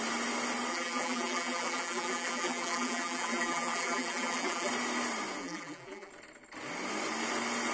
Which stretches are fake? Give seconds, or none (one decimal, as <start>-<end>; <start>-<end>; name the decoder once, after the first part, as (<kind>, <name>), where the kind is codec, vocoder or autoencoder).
0.7-4.7 (vocoder, BigVGAN v2); 5.4-6.1